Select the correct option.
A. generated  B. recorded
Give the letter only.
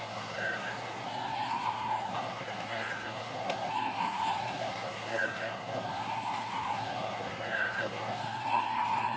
A